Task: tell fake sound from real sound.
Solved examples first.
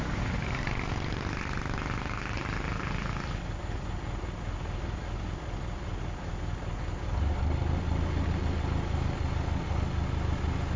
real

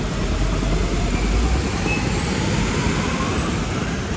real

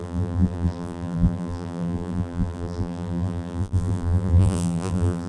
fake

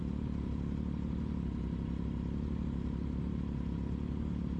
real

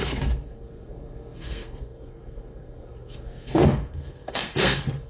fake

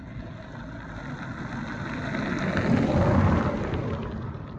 real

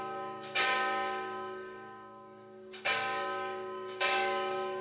fake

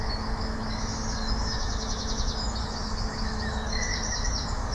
fake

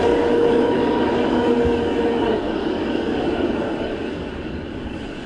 fake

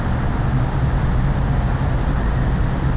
real